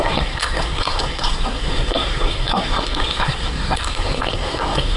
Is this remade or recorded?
remade